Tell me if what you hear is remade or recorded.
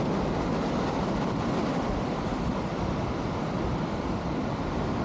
recorded